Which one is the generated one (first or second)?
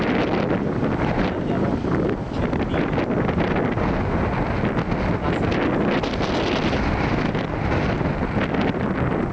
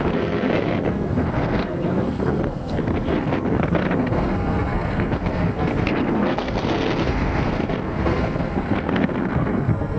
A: second